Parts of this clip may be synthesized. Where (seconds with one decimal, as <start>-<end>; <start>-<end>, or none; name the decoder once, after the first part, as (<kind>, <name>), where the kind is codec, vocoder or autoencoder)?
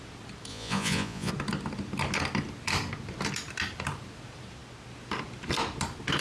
0.5-1.3 (vocoder, Vocos)